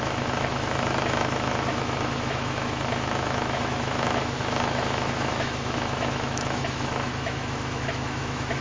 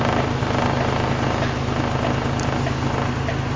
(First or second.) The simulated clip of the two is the first